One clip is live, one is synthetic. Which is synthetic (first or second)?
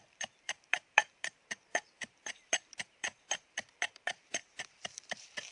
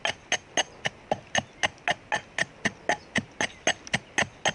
first